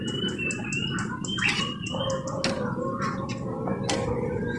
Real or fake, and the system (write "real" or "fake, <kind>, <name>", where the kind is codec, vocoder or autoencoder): real